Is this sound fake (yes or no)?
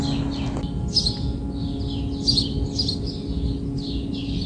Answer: no